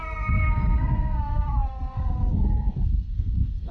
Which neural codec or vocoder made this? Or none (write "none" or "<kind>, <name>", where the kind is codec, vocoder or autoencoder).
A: codec, SNAC